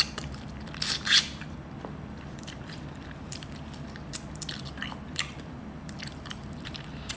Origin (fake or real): fake